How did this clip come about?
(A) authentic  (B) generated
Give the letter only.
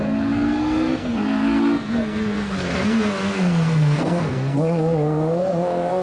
B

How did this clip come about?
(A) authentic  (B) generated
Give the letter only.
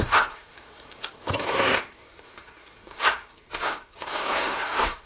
B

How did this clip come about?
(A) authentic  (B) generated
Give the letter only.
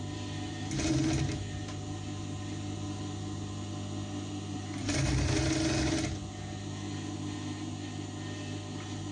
A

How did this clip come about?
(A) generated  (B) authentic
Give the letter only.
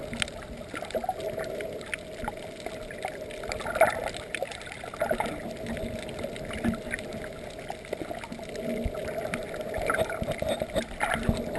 B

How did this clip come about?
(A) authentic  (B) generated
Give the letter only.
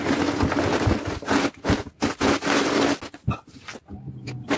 A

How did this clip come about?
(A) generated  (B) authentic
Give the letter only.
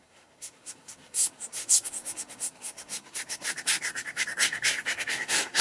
A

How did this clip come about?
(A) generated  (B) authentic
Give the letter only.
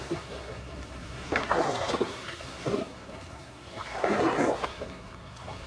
A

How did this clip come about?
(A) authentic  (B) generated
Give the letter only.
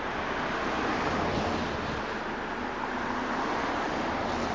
A